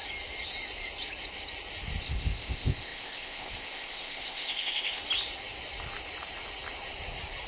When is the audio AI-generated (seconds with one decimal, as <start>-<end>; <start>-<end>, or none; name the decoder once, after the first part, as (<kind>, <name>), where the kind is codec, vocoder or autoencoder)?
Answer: 2.0-5.0 (codec, ZipCodec)